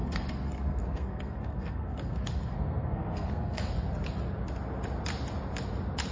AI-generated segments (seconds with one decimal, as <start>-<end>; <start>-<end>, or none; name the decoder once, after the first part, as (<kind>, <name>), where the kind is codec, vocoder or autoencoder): 0.0-3.7 (codec, SNAC)